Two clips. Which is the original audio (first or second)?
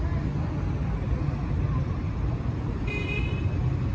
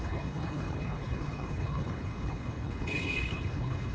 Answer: first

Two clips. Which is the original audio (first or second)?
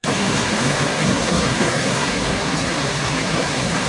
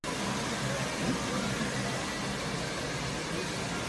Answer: second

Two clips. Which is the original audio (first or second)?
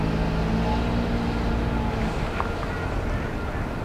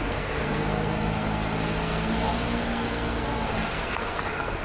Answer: first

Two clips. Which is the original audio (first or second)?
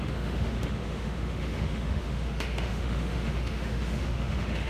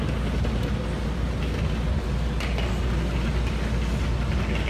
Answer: second